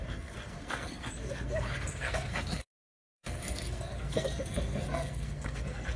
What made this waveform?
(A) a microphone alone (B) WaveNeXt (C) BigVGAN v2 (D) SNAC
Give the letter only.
D